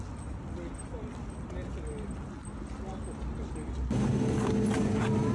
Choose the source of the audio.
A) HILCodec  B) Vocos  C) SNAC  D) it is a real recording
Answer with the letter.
D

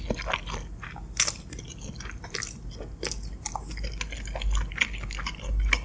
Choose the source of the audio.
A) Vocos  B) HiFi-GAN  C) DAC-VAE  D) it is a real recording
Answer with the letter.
D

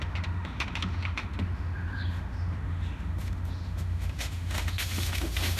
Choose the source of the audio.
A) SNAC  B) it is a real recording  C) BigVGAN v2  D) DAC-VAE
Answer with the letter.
D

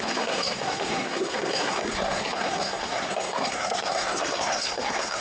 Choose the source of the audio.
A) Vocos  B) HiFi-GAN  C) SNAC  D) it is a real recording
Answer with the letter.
C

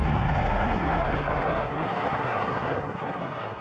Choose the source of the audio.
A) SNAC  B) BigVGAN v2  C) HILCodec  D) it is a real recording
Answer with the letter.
A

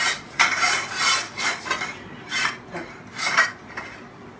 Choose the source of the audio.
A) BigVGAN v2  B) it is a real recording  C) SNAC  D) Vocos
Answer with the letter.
A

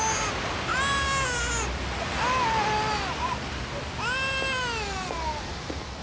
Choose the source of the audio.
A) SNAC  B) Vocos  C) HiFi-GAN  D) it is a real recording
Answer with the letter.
D